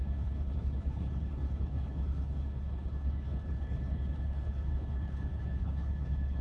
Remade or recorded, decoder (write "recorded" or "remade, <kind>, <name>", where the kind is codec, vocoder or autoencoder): remade, codec, HILCodec